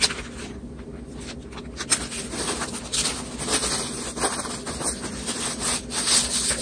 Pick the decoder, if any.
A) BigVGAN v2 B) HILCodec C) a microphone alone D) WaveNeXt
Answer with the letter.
C